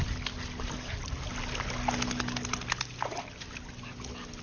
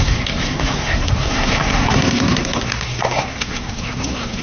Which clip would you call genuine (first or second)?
first